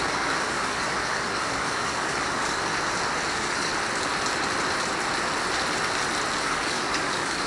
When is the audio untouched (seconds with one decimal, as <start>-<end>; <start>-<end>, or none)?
2.7-3.3; 3.7-6.4